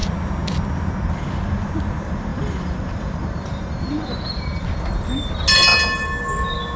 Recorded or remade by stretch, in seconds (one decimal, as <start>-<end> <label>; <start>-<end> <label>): 0.0-2.3 recorded; 2.3-4.6 remade; 4.6-6.8 recorded